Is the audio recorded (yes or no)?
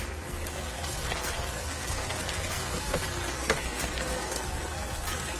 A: no